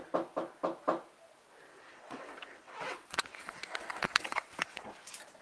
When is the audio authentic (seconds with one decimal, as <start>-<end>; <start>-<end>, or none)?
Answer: 0.0-1.7; 4.9-5.4